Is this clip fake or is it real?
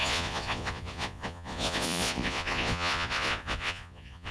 fake